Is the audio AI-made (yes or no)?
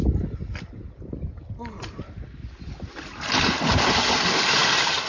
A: no